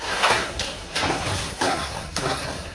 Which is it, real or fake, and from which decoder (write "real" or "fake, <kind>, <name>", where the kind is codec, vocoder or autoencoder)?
fake, codec, SNAC